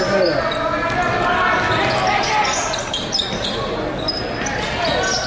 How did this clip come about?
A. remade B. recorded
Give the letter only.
B